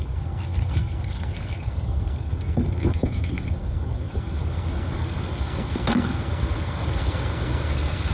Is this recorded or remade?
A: remade